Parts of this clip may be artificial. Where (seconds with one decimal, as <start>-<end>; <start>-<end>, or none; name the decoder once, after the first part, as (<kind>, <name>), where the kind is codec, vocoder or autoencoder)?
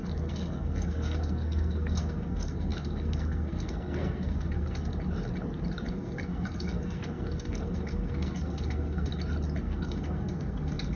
0.0-4.9 (codec, SNAC); 5.9-9.1; 9.6-11.0